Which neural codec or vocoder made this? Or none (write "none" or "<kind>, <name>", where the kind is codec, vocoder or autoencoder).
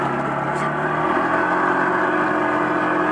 none